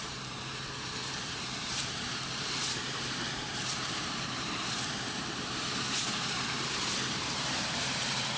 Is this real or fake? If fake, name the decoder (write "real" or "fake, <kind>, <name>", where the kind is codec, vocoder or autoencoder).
fake, vocoder, BigVGAN v2